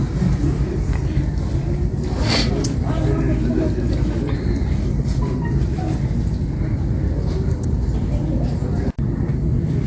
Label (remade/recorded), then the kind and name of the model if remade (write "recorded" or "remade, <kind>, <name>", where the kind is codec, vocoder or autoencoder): recorded